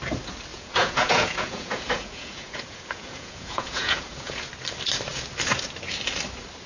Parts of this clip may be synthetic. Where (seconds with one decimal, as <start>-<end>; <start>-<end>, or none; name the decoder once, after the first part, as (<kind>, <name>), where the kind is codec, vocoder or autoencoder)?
0.5-4.5 (vocoder, Vocos)